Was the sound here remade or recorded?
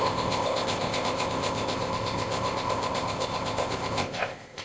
remade